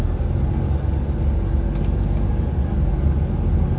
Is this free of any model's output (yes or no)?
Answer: yes